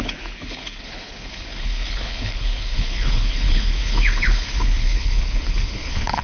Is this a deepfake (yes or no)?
yes